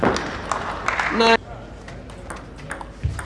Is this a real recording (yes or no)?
yes